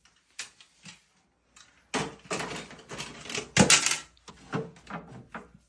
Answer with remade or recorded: recorded